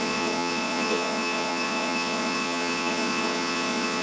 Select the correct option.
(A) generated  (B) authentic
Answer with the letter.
A